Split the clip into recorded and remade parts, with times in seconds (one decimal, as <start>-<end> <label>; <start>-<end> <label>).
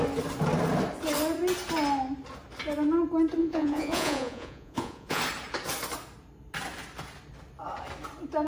0.0-3.4 recorded; 3.4-5.2 remade; 5.2-8.5 recorded